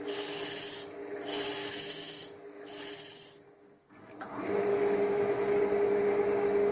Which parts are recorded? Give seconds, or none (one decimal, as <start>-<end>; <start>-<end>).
0.0-1.6; 2.8-4.7; 5.6-6.7